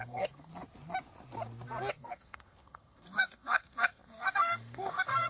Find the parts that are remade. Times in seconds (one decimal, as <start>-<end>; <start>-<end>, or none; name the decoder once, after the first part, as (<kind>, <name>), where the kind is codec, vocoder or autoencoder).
0.0-0.5 (codec, SNAC); 1.9-5.3

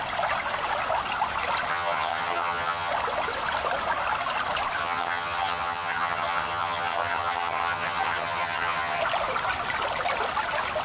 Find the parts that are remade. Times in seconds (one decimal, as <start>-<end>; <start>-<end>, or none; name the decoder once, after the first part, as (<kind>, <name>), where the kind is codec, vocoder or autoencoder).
1.7-2.9 (vocoder, HiFi-GAN); 4.8-9.0

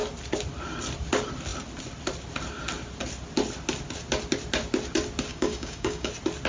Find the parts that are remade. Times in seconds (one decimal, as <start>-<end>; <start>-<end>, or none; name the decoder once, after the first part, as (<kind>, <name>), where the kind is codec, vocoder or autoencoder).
5.3-6.1 (codec, DAC)

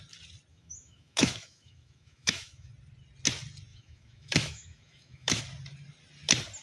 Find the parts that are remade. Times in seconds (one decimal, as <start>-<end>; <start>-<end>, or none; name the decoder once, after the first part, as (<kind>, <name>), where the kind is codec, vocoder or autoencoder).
0.5-2.7 (autoencoder, DAC-VAE); 3.7-5.4

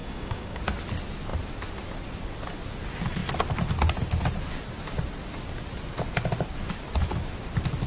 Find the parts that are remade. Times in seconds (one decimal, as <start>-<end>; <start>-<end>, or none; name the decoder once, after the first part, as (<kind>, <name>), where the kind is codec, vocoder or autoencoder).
0.0-0.6 (codec, DAC)

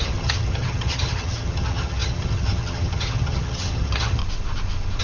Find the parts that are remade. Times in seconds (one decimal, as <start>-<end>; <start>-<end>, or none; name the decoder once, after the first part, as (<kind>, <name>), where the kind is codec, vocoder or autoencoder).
0.0-4.2 (vocoder, HiFi-GAN)

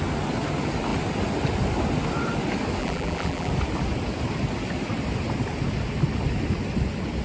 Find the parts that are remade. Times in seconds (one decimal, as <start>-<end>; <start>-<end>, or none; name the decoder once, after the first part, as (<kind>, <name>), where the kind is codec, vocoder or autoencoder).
2.8-3.5 (vocoder, BigVGAN v2)

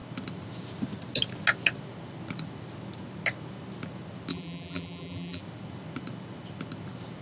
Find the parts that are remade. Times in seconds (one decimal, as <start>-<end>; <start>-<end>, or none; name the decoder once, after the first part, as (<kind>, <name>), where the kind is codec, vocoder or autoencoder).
4.3-5.4 (vocoder, BigVGAN v2)